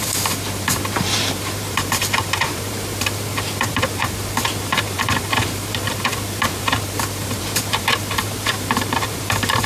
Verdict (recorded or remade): remade